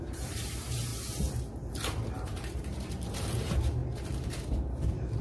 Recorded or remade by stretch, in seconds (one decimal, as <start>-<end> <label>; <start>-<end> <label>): 0.0-0.9 remade; 0.9-1.7 recorded; 1.7-5.2 remade